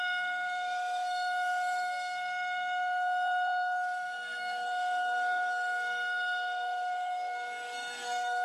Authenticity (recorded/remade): remade